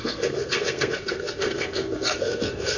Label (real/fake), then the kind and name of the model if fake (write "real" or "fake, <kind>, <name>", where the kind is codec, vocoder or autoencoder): fake, codec, SNAC